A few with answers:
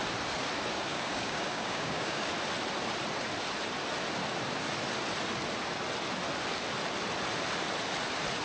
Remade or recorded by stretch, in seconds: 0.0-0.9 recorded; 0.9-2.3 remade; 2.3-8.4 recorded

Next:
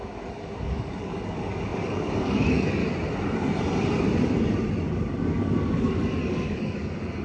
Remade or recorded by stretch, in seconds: 0.0-2.8 remade; 2.8-4.9 recorded; 4.9-7.2 remade

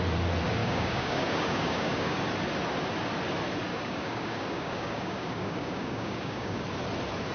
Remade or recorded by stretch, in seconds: 0.0-0.6 recorded; 0.6-2.2 remade; 2.2-3.7 recorded; 3.7-6.6 remade; 6.6-7.3 recorded